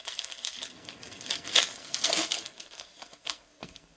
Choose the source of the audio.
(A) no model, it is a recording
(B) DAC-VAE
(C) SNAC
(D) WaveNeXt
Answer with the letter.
C